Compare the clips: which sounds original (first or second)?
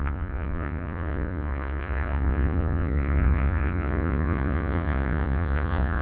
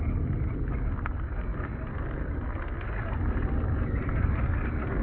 second